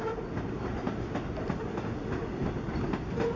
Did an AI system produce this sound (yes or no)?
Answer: no